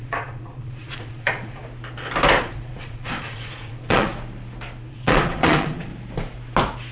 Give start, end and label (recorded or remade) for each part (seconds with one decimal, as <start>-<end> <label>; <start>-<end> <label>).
0.0-1.6 remade; 1.6-2.4 recorded; 2.4-4.1 remade; 4.1-4.9 recorded; 4.9-5.9 remade; 5.9-6.9 recorded